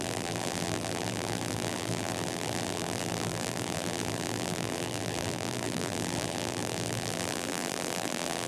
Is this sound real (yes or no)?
no